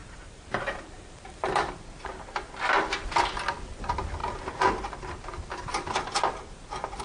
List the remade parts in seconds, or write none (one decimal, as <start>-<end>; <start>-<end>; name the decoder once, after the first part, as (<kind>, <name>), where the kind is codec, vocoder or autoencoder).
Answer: 0.0-1.7 (vocoder, BigVGAN v2)